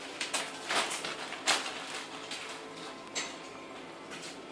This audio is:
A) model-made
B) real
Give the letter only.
B